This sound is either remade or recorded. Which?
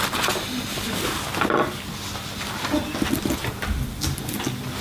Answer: recorded